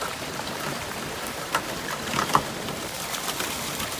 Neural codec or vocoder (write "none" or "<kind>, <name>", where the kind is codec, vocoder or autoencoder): vocoder, BigVGAN v2